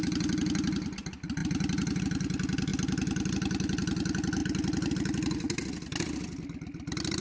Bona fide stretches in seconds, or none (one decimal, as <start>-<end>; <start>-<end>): 0.0-1.4; 2.0-7.2